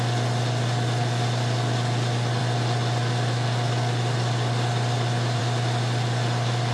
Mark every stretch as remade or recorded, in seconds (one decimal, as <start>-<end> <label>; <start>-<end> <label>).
0.0-6.7 recorded